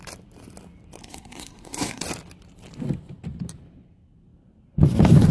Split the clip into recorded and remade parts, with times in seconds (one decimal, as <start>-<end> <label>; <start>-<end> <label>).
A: 0.0-1.0 recorded; 1.0-2.0 remade; 2.0-5.3 recorded